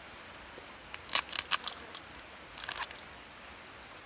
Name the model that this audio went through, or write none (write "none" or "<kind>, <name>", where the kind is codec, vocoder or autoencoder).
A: none